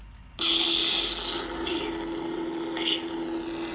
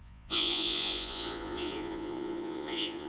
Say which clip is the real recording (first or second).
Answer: first